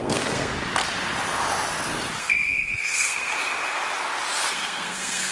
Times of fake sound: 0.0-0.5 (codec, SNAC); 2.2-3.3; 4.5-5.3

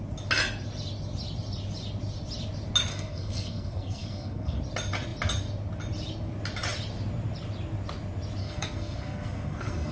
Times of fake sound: 2.9-4.6 (codec, SNAC); 8.4-9.9

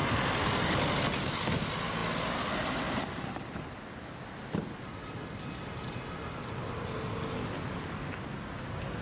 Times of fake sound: none